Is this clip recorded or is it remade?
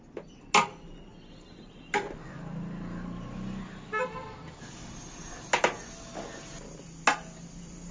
recorded